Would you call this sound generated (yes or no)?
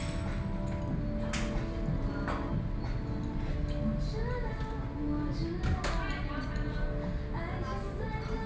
no